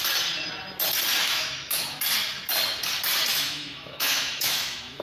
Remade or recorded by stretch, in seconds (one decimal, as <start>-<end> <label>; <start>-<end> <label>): 0.0-1.2 recorded; 1.2-2.0 remade; 2.0-3.3 recorded; 3.3-5.0 remade